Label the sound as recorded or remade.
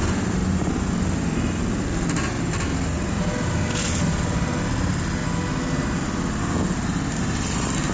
recorded